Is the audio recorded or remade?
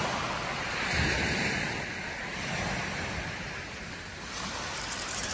recorded